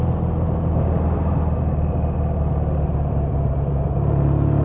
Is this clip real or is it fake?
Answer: real